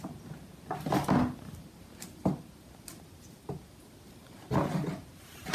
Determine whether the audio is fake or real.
real